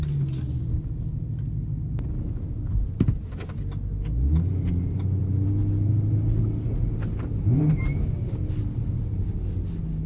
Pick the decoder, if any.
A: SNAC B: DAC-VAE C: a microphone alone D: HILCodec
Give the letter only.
C